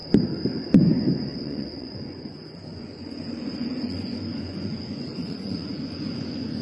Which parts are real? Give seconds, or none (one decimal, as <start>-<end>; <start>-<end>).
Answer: 0.0-0.8

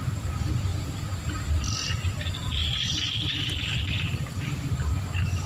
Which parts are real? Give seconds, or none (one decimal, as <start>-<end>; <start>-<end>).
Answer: 0.0-2.6; 3.5-5.5

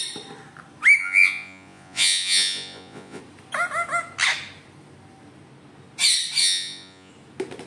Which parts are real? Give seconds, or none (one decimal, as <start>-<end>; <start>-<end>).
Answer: 0.0-1.0; 3.2-6.4; 7.1-7.7

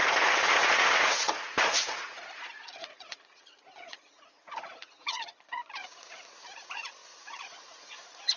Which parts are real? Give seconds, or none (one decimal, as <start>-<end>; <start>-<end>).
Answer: none

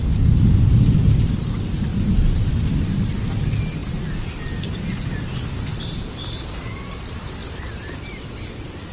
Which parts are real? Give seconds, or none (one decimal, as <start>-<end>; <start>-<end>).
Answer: 0.0-1.9; 2.5-5.7; 6.3-7.4; 8.2-8.9

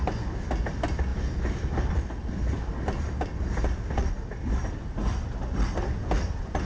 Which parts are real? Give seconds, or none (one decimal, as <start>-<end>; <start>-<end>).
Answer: 0.0-6.7

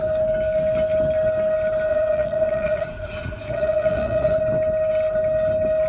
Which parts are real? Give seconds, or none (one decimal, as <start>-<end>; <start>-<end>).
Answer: 0.0-1.9; 4.4-5.9

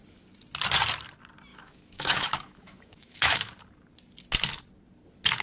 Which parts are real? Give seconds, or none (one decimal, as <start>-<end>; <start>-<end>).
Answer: 0.0-1.5; 3.5-5.4